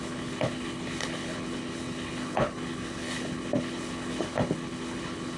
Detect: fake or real fake